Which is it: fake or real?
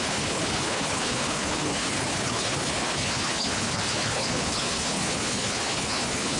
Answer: fake